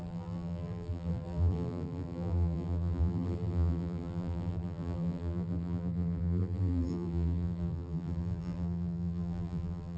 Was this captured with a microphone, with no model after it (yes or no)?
no